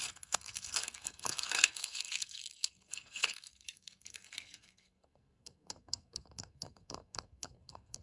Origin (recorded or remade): remade